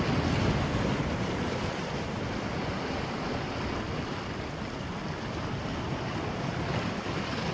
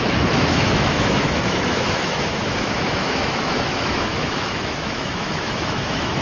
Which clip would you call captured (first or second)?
first